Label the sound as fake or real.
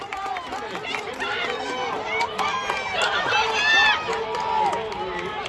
real